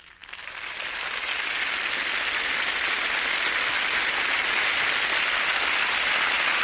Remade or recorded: recorded